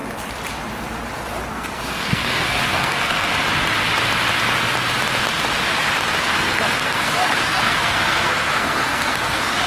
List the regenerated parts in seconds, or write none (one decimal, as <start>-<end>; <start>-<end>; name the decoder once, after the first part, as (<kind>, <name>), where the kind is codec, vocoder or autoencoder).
1.5-3.3 (codec, SNAC); 6.2-9.7